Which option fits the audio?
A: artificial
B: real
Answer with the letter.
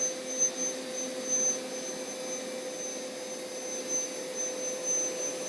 B